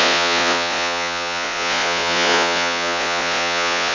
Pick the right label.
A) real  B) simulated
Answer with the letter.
B